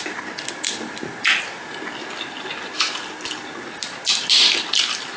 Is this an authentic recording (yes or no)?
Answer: yes